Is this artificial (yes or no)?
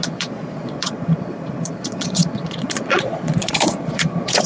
yes